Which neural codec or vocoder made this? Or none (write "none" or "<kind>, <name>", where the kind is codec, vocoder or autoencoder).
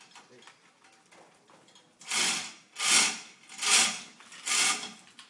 none